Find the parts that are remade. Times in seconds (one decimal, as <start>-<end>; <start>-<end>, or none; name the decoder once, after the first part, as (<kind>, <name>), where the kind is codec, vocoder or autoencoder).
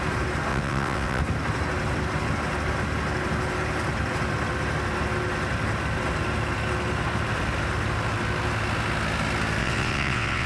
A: 0.5-1.2 (vocoder, WaveNeXt); 9.6-10.5